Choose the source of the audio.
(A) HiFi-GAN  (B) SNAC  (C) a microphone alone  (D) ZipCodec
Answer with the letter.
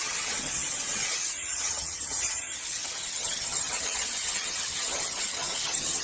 A